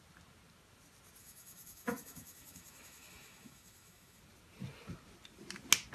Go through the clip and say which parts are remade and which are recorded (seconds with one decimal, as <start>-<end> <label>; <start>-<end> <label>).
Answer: 0.0-1.2 recorded; 1.2-4.2 remade; 4.2-5.9 recorded